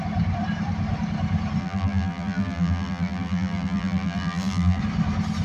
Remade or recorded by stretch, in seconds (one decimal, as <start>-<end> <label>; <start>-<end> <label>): 0.0-1.6 recorded; 1.6-4.8 remade; 4.8-5.4 recorded